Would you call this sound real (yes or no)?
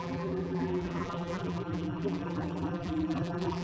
no